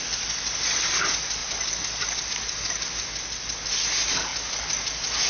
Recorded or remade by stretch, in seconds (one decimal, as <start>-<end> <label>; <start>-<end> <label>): 0.0-1.4 recorded; 1.4-2.3 remade; 2.3-5.3 recorded